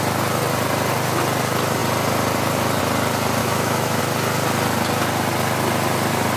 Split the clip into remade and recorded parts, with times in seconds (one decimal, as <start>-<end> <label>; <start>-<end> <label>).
0.0-3.4 recorded; 3.4-4.0 remade; 4.0-6.4 recorded